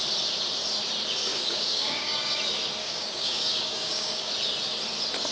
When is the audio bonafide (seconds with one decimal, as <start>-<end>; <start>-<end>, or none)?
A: 0.0-1.3; 2.4-2.8; 4.3-5.3